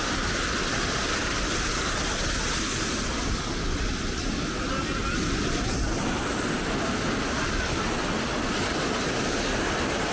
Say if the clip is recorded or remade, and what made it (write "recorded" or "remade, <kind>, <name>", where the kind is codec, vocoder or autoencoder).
recorded